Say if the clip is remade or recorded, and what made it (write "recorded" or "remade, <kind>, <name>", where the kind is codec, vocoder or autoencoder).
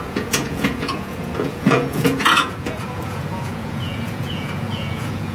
remade, vocoder, Vocos